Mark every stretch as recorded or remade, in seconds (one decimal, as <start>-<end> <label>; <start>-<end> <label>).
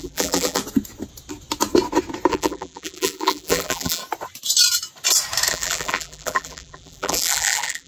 0.0-0.6 remade; 0.6-2.3 recorded; 2.3-4.0 remade; 4.0-5.5 recorded; 5.5-7.9 remade